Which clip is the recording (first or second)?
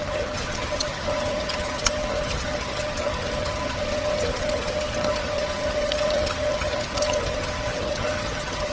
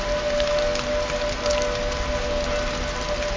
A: second